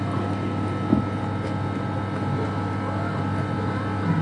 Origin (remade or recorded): recorded